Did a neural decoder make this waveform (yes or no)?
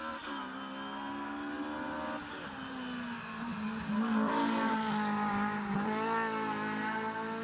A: no